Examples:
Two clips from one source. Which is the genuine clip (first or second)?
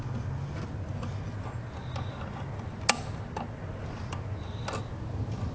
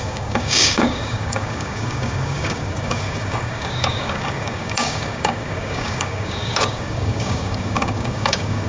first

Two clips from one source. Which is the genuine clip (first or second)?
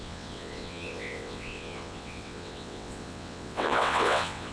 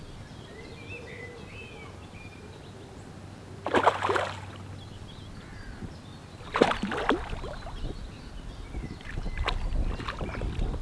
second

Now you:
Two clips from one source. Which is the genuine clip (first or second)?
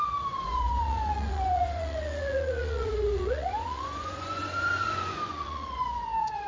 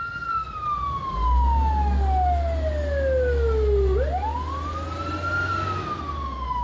second